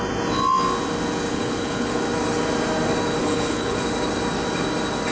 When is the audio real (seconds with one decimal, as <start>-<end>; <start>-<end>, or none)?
0.0-1.3; 2.0-3.2; 3.8-5.1